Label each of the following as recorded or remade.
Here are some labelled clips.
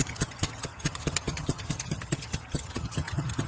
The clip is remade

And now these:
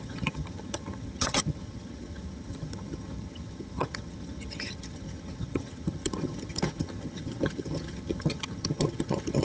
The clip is remade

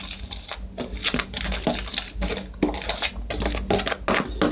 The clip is recorded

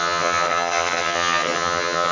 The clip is remade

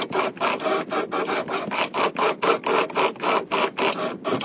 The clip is recorded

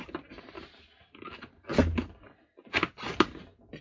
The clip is recorded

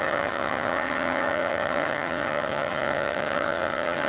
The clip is remade